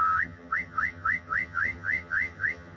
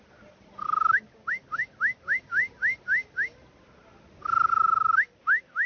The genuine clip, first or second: second